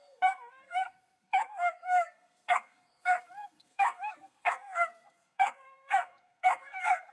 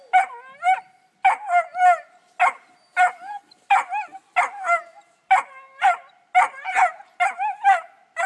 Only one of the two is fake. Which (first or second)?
first